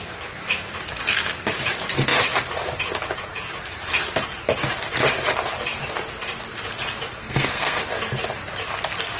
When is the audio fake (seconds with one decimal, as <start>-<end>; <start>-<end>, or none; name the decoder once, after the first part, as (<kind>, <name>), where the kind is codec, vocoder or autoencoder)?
7.2-7.8 (codec, SNAC)